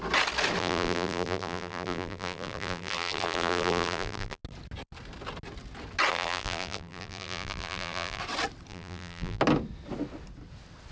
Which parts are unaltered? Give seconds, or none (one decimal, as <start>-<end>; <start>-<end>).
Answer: 0.0-0.6; 4.4-6.1; 8.2-8.7; 9.4-10.9